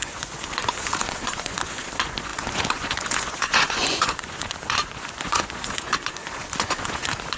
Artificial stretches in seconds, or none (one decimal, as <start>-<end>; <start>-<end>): 0.0-7.4